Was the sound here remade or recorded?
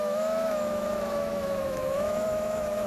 remade